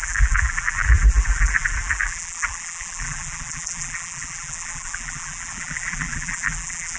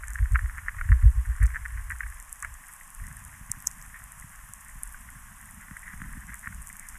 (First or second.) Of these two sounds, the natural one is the second